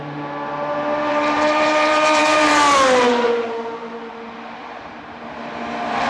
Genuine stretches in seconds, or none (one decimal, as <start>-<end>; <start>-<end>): 0.0-1.1; 4.1-4.6; 5.4-6.1